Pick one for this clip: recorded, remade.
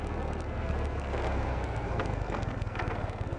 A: remade